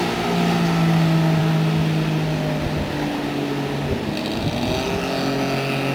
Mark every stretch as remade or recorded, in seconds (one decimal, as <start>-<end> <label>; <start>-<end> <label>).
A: 0.0-5.9 recorded